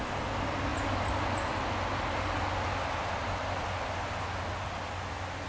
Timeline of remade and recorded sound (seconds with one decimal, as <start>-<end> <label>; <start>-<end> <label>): 0.0-5.5 recorded